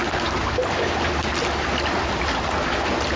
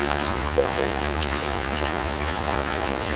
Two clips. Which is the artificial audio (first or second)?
second